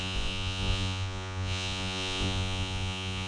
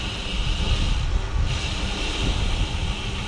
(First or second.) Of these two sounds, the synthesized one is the first